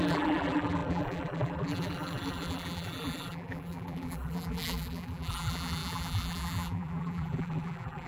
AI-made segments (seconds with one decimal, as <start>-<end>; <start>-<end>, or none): 0.0-8.1